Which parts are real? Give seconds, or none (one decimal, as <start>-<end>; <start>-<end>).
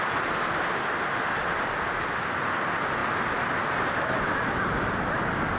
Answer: 0.0-5.6